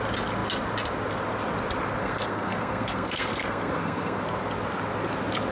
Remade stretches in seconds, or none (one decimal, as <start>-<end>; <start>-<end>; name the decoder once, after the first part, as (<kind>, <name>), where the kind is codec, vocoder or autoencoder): 2.0-4.2 (codec, SNAC)